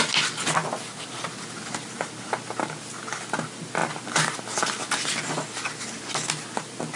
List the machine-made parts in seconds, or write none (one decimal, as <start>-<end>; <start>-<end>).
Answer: none